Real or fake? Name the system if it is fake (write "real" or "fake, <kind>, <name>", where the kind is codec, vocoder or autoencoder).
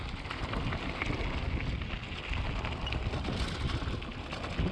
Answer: real